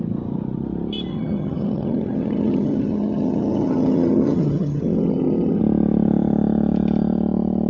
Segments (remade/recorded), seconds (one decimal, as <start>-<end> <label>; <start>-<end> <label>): 0.0-1.1 recorded; 1.1-5.6 remade; 5.6-7.7 recorded